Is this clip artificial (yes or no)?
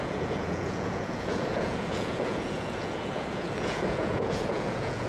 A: yes